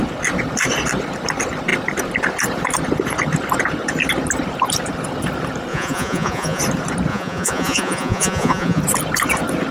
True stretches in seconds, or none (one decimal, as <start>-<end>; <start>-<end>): 0.0-5.7; 6.6-7.1; 8.8-9.7